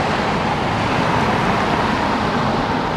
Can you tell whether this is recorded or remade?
recorded